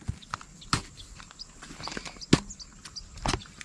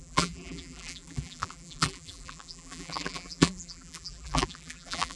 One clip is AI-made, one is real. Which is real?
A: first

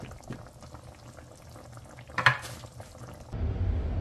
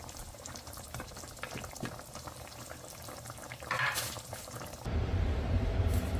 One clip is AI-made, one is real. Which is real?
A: first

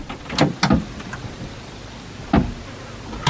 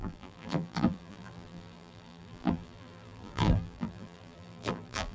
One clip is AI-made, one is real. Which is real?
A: first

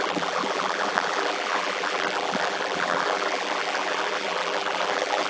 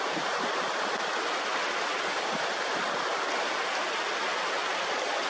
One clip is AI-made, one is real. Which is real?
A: second